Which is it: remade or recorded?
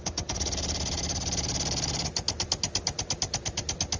recorded